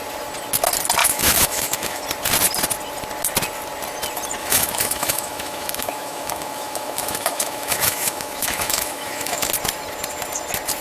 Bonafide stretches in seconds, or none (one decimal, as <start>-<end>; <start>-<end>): 0.0-1.0; 2.0-4.4; 9.5-10.8